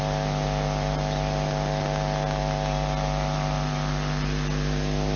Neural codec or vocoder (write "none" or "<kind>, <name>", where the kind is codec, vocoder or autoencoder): none